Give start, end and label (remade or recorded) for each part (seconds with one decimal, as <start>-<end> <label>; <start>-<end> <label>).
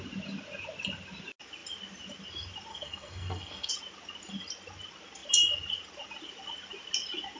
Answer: 0.0-2.7 recorded; 2.7-3.7 remade; 3.7-7.4 recorded